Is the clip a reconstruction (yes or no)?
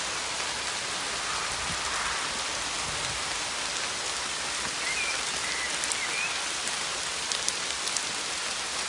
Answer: no